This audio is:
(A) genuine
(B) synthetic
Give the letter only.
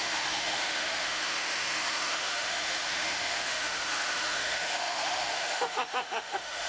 B